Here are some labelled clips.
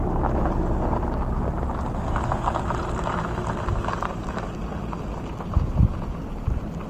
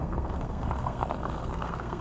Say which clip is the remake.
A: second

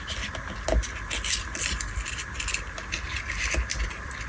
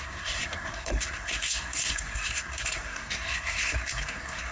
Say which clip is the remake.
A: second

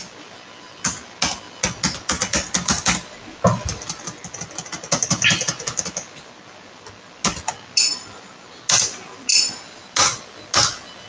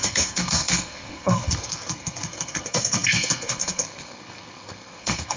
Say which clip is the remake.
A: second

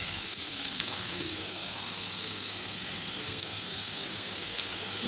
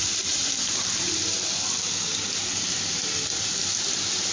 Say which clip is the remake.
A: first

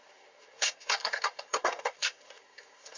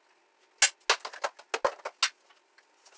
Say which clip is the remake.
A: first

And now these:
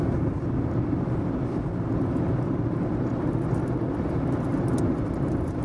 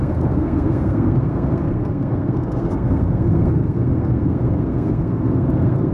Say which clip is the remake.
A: second